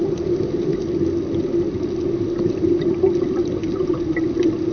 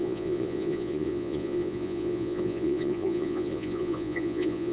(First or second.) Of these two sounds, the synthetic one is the second